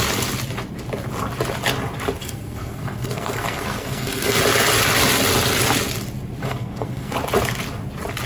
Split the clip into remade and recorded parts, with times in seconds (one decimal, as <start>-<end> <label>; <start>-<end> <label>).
0.0-2.2 recorded; 2.2-4.4 remade; 4.4-6.4 recorded; 6.4-7.1 remade; 7.1-8.3 recorded

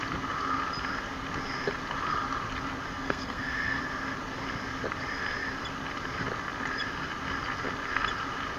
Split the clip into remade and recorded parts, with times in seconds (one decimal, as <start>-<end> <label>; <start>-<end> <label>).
0.0-2.9 recorded; 2.9-3.8 remade; 3.8-8.6 recorded

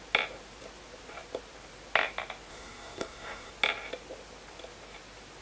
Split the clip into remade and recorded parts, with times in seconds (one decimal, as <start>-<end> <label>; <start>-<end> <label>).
0.0-2.5 recorded; 2.5-3.5 remade; 3.5-5.4 recorded

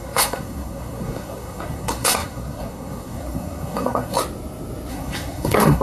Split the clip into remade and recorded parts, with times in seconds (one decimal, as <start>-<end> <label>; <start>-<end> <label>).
0.0-4.2 remade; 4.2-4.9 recorded; 4.9-5.8 remade

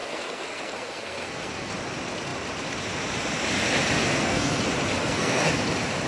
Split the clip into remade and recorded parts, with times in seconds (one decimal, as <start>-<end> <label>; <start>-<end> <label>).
0.0-1.7 remade; 1.7-4.0 recorded; 4.0-4.6 remade; 4.6-5.0 recorded; 5.0-5.5 remade; 5.5-6.1 recorded

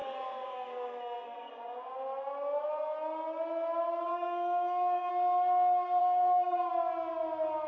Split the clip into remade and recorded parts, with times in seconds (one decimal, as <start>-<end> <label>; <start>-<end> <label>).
0.0-1.5 remade; 1.5-4.1 recorded; 4.1-5.1 remade; 5.1-6.0 recorded; 6.0-6.7 remade; 6.7-7.7 recorded

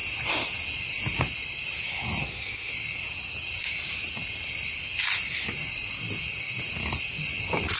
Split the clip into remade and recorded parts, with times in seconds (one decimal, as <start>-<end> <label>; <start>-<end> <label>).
0.0-2.2 recorded; 2.2-2.7 remade; 2.7-7.8 recorded

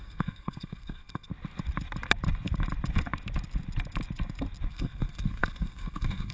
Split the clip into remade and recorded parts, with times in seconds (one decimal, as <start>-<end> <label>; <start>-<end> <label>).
0.0-1.3 remade; 1.3-4.7 recorded; 4.7-6.3 remade